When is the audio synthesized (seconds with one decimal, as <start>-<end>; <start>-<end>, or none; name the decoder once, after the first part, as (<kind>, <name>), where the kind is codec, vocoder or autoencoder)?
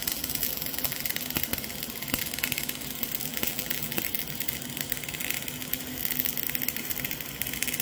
0.0-1.1 (vocoder, BigVGAN v2); 3.3-4.0